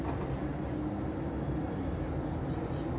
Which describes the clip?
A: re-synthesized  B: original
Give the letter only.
B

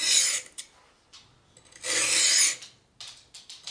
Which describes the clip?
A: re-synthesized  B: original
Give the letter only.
B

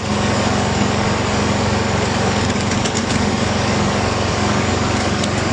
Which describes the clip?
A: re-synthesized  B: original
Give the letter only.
A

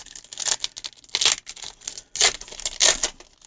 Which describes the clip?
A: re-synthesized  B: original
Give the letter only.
B